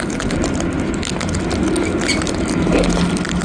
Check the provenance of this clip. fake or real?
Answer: real